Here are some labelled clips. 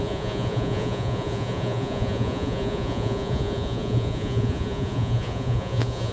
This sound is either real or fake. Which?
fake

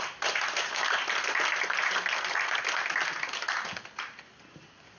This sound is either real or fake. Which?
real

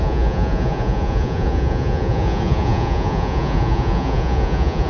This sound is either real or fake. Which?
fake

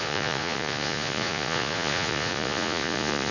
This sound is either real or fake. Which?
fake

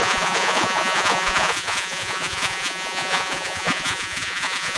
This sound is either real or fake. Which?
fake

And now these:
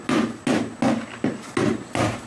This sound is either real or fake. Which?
real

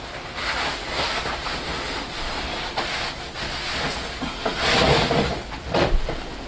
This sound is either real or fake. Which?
real